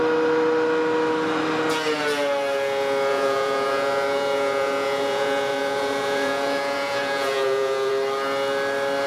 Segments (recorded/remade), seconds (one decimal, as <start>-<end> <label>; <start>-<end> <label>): 0.0-3.1 recorded; 3.1-7.9 remade; 7.9-9.1 recorded